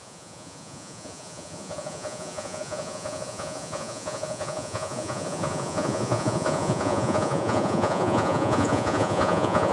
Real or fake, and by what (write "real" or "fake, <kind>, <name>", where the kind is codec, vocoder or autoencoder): fake, vocoder, Vocos